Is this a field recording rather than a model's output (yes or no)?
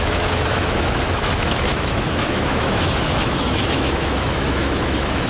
no